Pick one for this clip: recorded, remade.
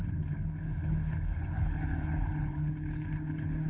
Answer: remade